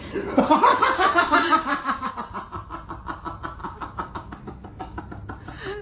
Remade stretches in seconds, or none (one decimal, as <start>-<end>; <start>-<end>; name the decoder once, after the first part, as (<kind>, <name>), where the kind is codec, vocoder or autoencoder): 0.7-2.1 (codec, DAC); 3.6-5.0